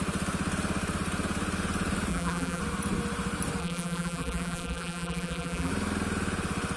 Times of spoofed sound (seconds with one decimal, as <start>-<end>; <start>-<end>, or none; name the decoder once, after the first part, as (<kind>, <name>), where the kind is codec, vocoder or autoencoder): 2.1-2.6 (vocoder, BigVGAN v2); 3.6-5.7